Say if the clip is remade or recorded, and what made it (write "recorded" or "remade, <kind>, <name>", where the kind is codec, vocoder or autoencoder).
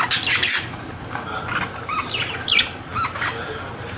recorded